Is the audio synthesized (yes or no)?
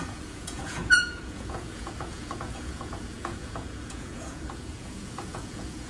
yes